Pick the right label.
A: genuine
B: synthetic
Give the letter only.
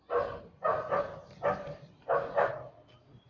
A